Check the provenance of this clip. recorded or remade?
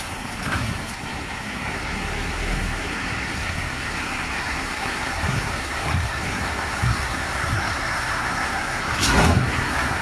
remade